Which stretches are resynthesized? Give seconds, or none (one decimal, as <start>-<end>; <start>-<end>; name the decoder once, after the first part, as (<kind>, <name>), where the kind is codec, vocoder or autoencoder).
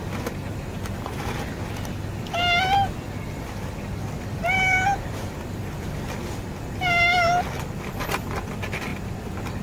8.9-9.6 (vocoder, BigVGAN v2)